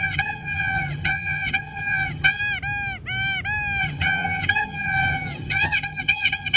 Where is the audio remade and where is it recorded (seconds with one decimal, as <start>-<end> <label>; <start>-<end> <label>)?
0.0-2.4 remade; 2.4-3.8 recorded; 3.8-6.6 remade